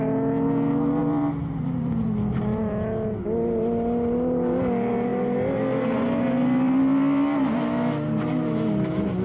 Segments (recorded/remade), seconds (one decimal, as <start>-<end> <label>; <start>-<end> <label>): 0.0-1.0 recorded; 1.0-2.4 remade; 2.4-9.2 recorded